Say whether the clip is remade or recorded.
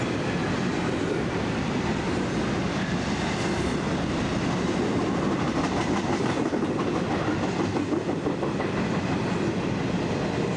recorded